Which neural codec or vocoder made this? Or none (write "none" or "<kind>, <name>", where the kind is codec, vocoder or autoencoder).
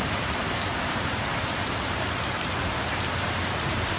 vocoder, BigVGAN v2